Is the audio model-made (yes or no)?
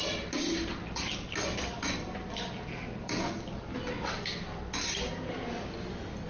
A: no